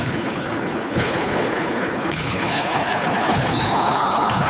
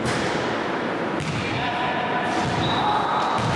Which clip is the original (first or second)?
second